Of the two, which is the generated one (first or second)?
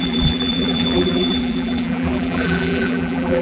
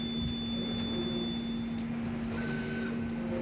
first